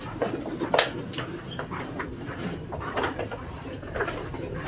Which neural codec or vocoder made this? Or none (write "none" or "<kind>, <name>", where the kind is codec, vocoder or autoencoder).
none